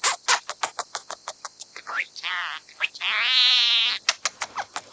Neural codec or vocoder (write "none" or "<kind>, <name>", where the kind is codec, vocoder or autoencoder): none